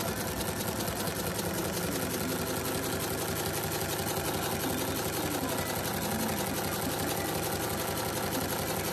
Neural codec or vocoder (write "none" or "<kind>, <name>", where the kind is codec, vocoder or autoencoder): none